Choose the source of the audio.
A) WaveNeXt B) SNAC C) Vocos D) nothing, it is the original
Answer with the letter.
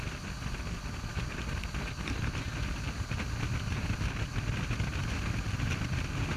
D